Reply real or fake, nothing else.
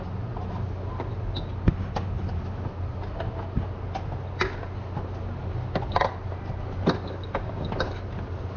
real